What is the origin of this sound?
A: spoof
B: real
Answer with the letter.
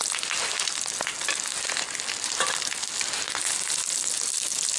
B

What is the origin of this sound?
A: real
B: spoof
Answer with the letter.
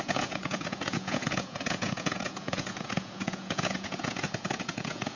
B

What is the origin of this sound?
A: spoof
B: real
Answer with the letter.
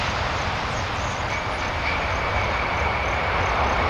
B